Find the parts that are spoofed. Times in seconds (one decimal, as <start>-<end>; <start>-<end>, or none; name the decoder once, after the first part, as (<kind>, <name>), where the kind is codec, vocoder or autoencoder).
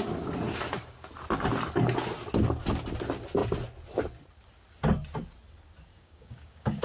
5.9-6.8 (codec, DAC)